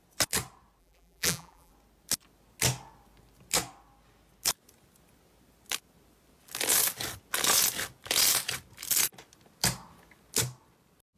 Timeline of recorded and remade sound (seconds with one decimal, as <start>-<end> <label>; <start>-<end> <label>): 0.0-0.8 recorded; 0.8-1.7 remade; 1.7-11.2 recorded